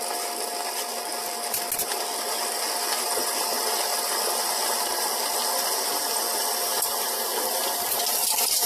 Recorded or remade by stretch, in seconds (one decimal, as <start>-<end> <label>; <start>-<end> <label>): 0.0-8.7 recorded